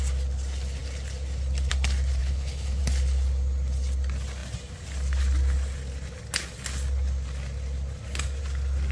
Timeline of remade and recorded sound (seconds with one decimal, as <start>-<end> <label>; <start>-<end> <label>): 0.0-2.2 recorded; 2.2-2.8 remade; 2.8-8.9 recorded